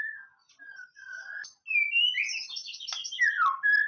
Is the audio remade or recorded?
recorded